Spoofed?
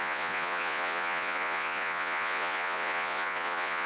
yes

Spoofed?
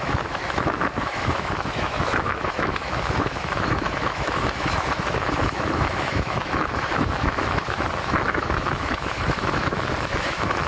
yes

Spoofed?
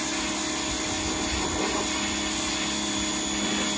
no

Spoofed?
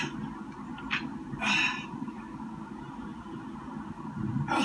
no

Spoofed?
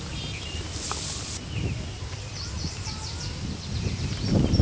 no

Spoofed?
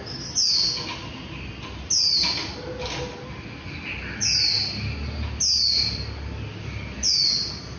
no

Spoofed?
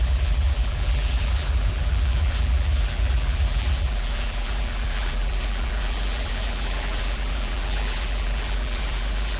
yes